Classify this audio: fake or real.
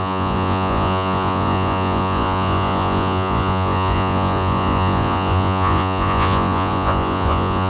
fake